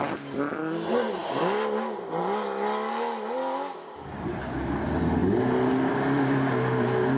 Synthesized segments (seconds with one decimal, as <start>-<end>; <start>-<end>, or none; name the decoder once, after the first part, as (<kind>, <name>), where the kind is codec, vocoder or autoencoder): none